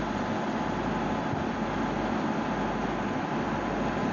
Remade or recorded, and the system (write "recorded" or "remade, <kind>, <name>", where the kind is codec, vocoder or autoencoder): recorded